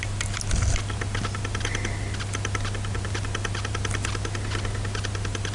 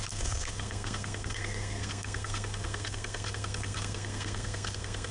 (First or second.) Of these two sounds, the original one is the first